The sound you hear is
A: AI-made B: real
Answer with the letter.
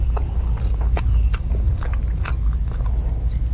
B